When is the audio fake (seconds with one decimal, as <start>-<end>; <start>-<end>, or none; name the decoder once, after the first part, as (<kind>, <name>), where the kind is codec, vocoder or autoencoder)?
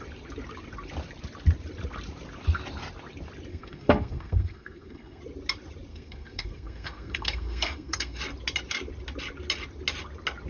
3.5-5.2 (codec, SNAC); 5.9-8.2